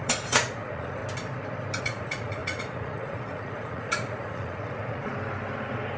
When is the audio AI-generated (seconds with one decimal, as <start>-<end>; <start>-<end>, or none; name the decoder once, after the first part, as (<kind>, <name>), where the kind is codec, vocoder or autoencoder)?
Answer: 0.0-1.0 (vocoder, Vocos); 1.8-5.1